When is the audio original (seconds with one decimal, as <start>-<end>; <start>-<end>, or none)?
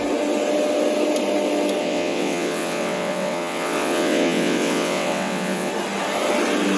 0.0-1.8; 5.7-6.8